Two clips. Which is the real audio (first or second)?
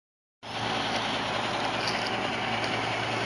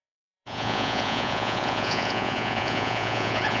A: first